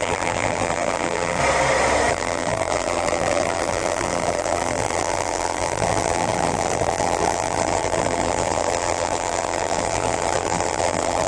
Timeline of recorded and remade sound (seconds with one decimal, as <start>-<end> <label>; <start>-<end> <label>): 0.0-1.4 remade; 1.4-2.1 recorded; 2.1-11.3 remade